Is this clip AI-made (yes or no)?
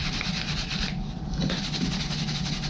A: no